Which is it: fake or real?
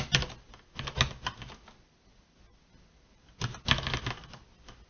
real